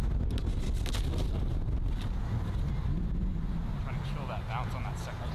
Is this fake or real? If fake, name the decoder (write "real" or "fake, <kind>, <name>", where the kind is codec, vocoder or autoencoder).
real